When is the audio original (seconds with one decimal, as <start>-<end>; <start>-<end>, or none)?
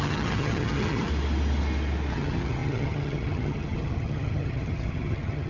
1.1-2.1